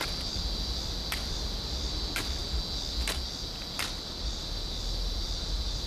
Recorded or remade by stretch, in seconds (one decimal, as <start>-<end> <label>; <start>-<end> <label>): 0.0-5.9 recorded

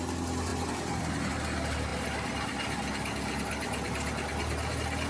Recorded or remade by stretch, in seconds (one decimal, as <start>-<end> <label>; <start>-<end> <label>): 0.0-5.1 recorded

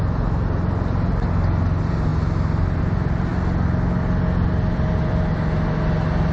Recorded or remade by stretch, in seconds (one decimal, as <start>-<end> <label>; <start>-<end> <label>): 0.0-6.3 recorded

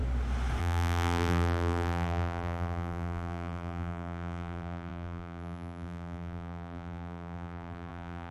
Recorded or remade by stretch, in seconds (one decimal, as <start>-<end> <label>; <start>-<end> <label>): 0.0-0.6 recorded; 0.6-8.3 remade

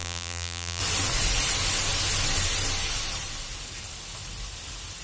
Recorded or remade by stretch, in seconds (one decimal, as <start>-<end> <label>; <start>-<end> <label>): 0.0-0.8 remade; 0.8-5.0 recorded

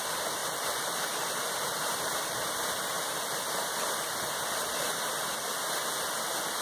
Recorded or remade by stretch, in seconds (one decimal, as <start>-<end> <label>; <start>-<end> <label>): 0.0-0.4 recorded; 0.4-4.4 remade; 4.4-6.6 recorded

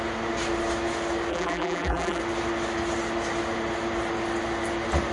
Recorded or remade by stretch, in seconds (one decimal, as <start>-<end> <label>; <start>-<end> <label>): 0.0-1.3 recorded; 1.3-2.2 remade; 2.2-5.1 recorded